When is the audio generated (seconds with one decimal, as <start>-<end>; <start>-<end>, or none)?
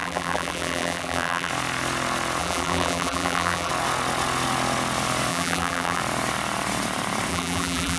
0.0-1.5; 2.4-3.7; 5.3-6.0; 7.3-8.0